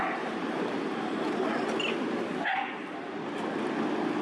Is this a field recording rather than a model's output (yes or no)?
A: yes